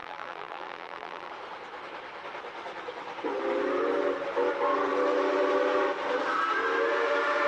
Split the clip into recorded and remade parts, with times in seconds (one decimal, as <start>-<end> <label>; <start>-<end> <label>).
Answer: 0.0-1.3 remade; 1.3-7.5 recorded